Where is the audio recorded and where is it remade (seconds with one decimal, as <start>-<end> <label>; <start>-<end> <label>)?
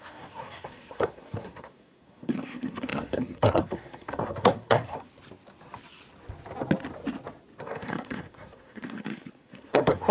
0.0-5.1 remade; 5.1-7.6 recorded; 7.6-10.1 remade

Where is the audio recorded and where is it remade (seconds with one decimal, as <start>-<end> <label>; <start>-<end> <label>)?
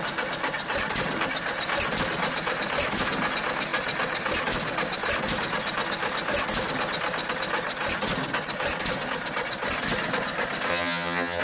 0.0-10.7 recorded; 10.7-11.4 remade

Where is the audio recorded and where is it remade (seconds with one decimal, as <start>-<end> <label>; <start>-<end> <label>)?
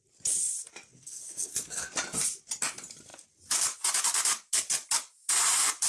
0.0-0.9 recorded; 0.9-1.9 remade; 1.9-5.9 recorded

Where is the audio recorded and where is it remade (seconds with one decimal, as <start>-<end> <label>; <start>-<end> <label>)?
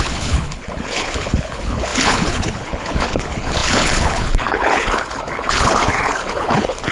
0.0-6.9 remade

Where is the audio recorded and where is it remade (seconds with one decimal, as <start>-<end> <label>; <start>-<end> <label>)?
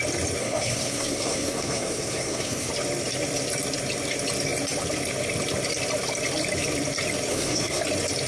0.0-0.4 recorded; 0.4-2.7 remade; 2.7-7.3 recorded; 7.3-7.8 remade; 7.8-8.3 recorded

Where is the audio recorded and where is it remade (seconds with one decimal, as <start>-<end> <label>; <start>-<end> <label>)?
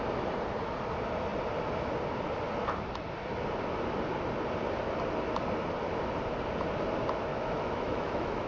0.0-7.3 recorded; 7.3-8.5 remade